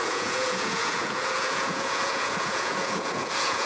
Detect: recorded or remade remade